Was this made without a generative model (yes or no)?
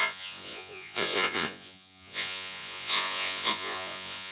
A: no